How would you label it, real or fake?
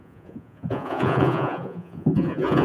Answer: fake